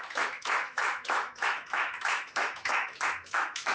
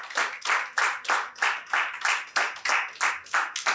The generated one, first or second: first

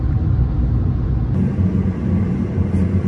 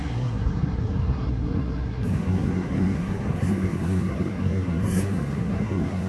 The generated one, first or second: second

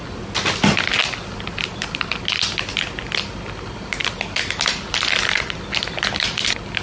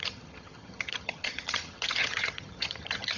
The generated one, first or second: second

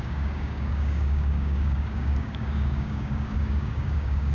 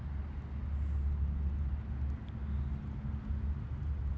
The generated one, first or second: first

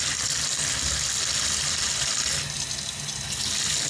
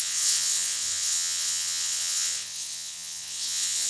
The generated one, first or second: second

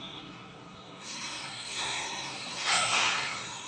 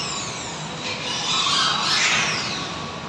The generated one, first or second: first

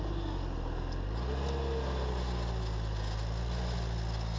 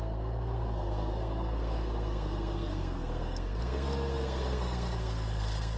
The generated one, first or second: second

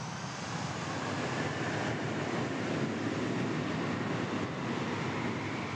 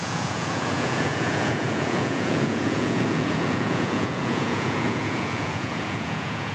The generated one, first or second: second